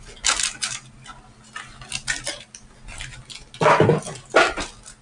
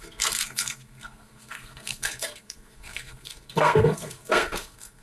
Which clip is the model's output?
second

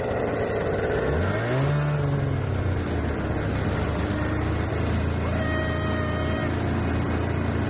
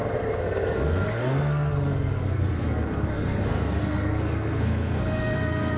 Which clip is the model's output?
second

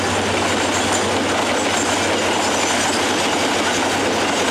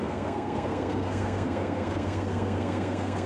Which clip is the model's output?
second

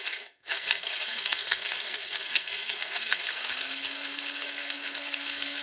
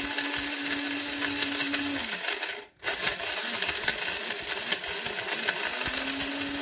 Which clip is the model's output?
first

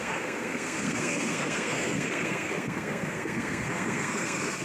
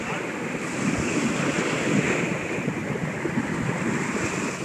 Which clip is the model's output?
first